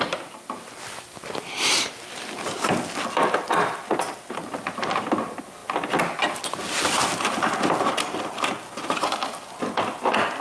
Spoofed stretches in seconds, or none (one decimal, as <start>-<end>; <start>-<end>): 5.6-6.2